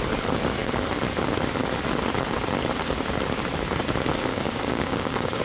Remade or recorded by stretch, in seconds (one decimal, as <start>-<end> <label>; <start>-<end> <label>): 0.0-4.3 recorded; 4.3-5.4 remade